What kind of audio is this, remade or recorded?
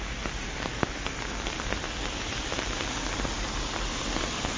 remade